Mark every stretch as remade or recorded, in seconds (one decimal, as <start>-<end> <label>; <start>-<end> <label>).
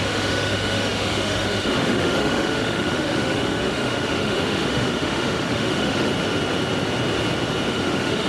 0.0-6.1 remade; 6.1-7.7 recorded; 7.7-8.3 remade